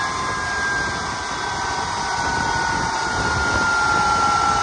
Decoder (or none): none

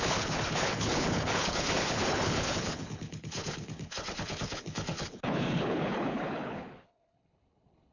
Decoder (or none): codec, HILCodec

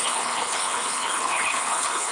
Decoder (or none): codec, HILCodec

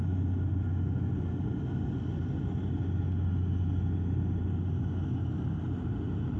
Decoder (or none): none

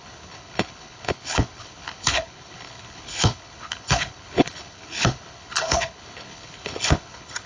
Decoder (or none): codec, HILCodec